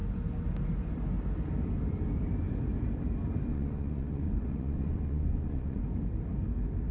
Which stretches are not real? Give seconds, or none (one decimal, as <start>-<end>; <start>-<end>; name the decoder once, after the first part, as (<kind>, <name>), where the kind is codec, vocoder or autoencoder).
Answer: 3.5-5.8 (vocoder, Vocos)